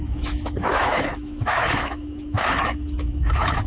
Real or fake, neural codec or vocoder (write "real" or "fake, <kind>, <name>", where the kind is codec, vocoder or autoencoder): fake, autoencoder, DAC-VAE